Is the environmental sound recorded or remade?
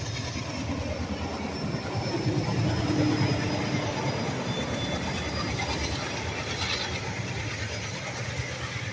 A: recorded